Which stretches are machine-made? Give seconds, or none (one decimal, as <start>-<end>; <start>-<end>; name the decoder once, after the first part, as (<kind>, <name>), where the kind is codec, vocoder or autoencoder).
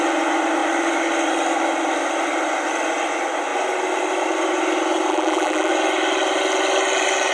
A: 5.1-5.7 (vocoder, BigVGAN v2)